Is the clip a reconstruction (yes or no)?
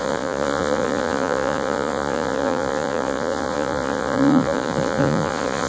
yes